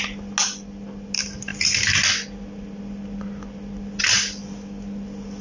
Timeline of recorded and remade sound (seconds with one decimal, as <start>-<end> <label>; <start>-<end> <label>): 0.0-5.4 recorded